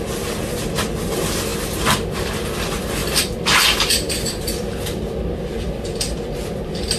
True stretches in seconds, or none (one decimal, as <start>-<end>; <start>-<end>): 0.0-1.5; 2.1-3.0